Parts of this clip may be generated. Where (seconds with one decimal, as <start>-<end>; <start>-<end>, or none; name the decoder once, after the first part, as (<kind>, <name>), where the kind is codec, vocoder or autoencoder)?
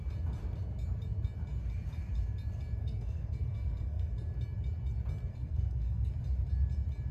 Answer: 2.8-4.1 (codec, SNAC); 5.3-6.1